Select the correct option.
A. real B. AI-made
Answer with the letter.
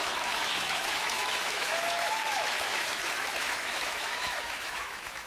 B